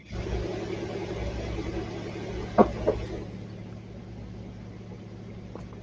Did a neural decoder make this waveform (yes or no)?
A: no